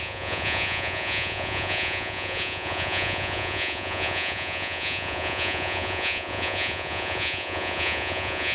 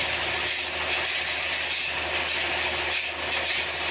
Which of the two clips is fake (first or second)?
first